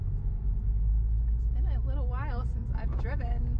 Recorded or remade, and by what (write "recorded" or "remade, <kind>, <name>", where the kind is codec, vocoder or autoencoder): recorded